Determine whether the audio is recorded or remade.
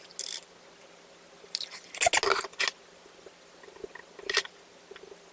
recorded